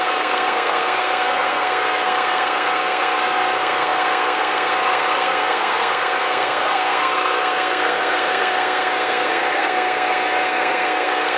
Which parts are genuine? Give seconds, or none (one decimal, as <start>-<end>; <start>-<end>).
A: none